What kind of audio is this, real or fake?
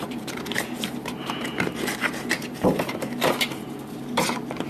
fake